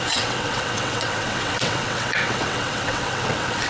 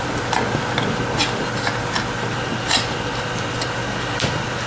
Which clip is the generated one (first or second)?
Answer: first